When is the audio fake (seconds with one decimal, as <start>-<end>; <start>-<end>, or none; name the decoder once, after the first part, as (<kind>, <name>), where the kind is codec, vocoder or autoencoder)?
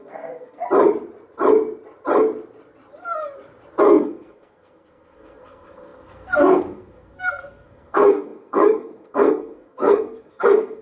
0.0-0.6 (codec, SNAC); 3.8-10.8